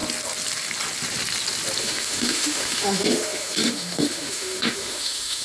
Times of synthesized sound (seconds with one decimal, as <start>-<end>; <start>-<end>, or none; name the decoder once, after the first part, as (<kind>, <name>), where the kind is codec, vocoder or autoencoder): 1.8-5.4 (autoencoder, DAC-VAE)